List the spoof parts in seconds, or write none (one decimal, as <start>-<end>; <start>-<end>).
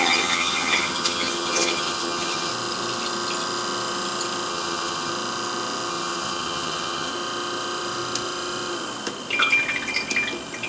0.0-2.5; 4.5-5.1; 5.9-7.1